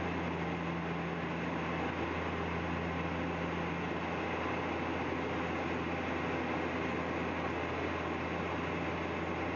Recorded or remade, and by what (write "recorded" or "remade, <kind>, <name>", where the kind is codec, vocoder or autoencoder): recorded